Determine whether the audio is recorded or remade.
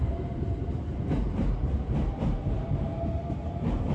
remade